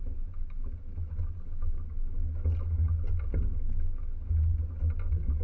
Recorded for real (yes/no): yes